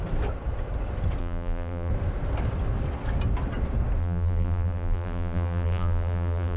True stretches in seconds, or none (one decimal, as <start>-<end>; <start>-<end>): 0.0-1.2; 1.9-4.0